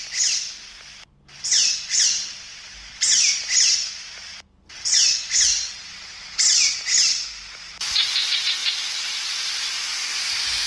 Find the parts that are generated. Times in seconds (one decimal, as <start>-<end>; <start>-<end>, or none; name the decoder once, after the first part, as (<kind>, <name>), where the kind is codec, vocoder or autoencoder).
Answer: none